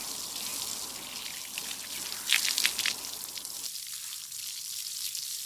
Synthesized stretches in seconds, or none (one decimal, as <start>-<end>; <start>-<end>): 0.0-0.5; 3.8-5.5